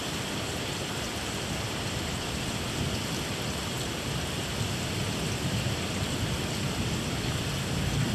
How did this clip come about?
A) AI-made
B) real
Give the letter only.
B